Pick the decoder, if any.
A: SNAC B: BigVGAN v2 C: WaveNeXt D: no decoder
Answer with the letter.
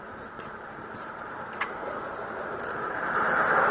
B